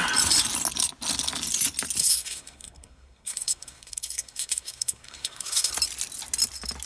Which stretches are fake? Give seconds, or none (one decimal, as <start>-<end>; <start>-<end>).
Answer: 2.0-5.7